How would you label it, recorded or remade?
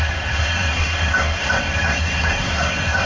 remade